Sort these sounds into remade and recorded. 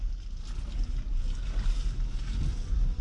recorded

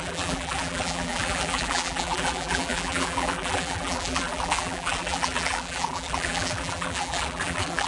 remade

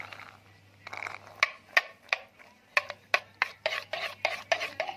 recorded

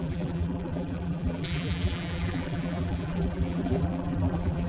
remade